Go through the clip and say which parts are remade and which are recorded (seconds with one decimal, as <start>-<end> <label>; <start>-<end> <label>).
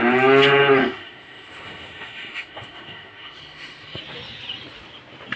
0.0-0.8 recorded; 0.8-4.0 remade; 4.0-5.4 recorded